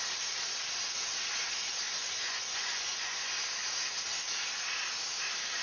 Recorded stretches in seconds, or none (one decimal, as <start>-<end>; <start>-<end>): 0.0-2.0; 3.3-5.6